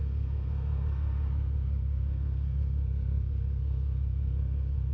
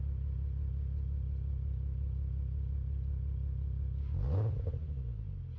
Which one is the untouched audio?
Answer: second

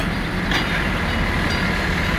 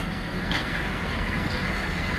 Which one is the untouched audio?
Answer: first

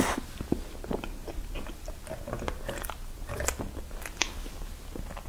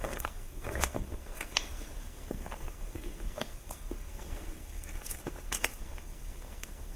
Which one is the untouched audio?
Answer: first